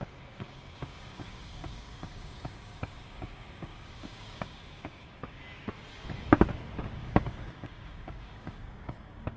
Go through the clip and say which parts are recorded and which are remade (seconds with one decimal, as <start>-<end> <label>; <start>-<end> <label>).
0.0-5.4 remade; 5.4-6.8 recorded; 6.8-9.4 remade